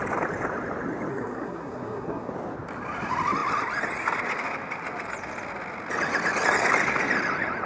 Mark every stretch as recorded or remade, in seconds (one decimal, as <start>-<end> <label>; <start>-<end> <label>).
0.0-1.1 recorded; 1.1-2.3 remade; 2.3-7.7 recorded